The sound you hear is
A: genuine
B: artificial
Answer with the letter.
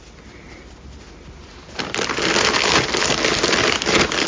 A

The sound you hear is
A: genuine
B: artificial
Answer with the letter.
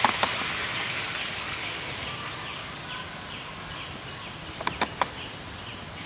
A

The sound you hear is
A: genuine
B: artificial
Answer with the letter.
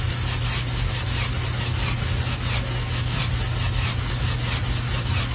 A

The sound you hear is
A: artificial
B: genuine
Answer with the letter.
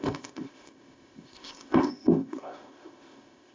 A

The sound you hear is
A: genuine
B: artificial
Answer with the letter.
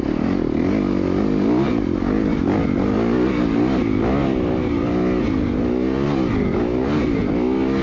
A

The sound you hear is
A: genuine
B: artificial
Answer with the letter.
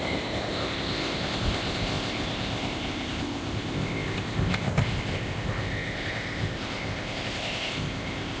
B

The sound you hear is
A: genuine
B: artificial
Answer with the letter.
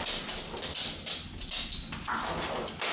A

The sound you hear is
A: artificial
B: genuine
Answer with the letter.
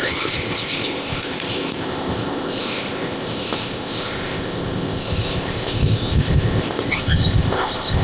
A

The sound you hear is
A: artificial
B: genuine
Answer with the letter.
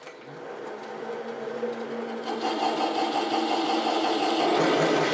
B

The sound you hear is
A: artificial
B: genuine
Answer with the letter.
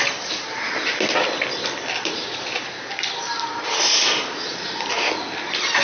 B